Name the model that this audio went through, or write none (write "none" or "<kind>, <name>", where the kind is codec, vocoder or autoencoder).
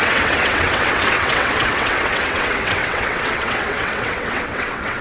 vocoder, WaveNeXt